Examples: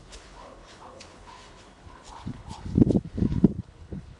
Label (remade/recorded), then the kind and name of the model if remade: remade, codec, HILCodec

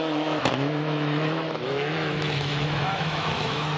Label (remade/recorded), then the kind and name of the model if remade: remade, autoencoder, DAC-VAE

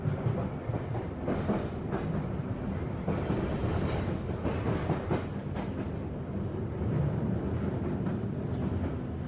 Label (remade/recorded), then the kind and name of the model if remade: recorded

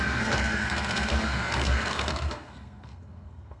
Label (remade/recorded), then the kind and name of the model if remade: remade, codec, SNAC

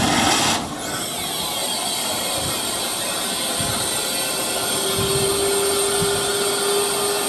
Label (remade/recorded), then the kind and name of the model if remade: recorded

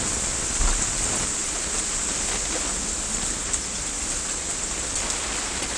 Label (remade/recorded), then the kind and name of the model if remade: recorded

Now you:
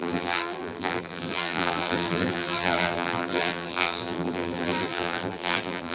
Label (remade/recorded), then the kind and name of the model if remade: remade, vocoder, BigVGAN v2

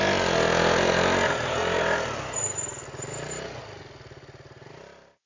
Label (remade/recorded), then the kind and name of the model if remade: recorded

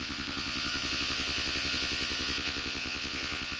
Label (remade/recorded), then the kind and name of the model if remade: remade, vocoder, Vocos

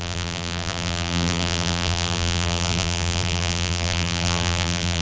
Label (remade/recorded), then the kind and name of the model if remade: remade, vocoder, BigVGAN v2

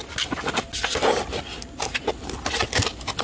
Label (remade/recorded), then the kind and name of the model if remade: recorded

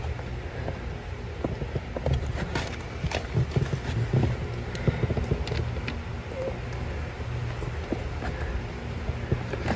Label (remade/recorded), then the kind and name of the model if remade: recorded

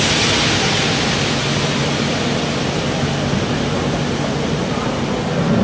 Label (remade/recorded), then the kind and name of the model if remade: recorded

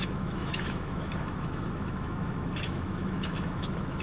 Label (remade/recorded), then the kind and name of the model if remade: remade, autoencoder, DAC-VAE